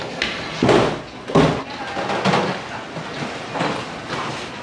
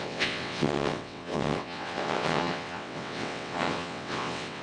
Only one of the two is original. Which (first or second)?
first